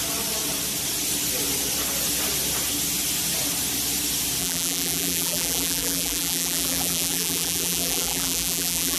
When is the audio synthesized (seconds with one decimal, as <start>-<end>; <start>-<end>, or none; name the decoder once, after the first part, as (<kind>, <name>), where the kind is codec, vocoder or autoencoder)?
4.4-9.0 (vocoder, BigVGAN v2)